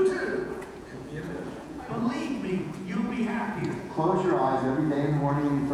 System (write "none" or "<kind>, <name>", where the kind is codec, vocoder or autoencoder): vocoder, Vocos